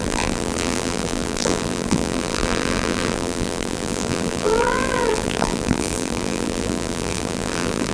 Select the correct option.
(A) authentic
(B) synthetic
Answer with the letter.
B